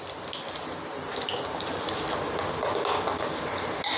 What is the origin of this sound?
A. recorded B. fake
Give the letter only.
A